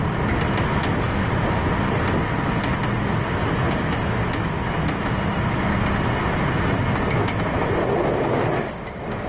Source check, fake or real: real